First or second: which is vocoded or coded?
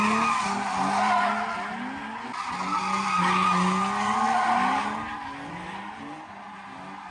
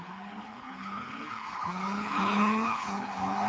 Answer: second